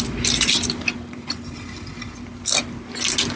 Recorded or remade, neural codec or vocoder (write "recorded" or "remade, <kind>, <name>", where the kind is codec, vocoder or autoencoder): recorded